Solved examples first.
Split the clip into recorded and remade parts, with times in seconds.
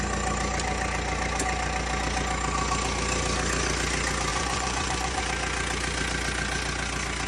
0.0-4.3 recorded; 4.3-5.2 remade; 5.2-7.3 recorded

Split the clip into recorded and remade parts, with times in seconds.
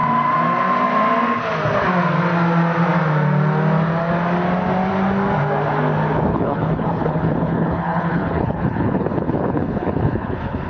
0.0-6.3 recorded; 6.3-10.7 remade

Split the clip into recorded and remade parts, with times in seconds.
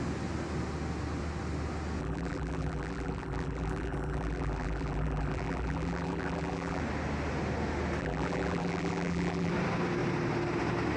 0.0-2.0 recorded; 2.0-6.8 remade; 6.8-8.0 recorded; 8.0-9.5 remade; 9.5-11.0 recorded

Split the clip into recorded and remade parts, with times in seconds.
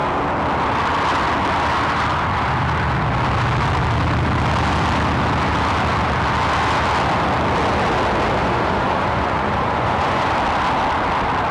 0.0-8.4 recorded; 8.4-10.3 remade; 10.3-11.5 recorded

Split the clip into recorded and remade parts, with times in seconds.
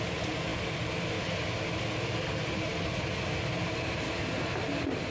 0.0-5.1 recorded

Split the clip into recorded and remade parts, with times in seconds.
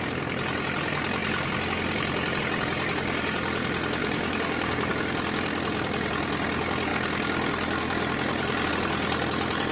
0.0-4.0 recorded; 4.0-4.9 remade; 4.9-9.7 recorded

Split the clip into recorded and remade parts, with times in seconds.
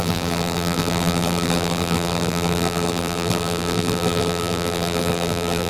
0.0-5.7 remade